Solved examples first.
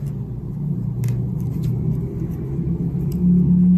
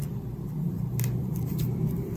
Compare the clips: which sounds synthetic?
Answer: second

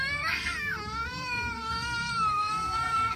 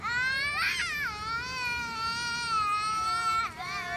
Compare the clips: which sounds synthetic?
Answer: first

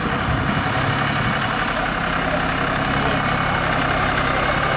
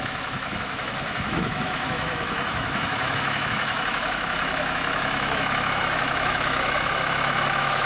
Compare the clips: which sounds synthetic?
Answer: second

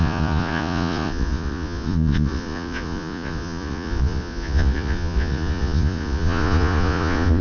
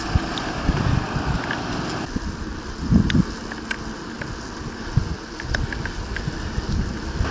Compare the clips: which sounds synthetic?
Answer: first